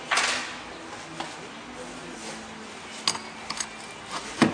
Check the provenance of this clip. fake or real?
real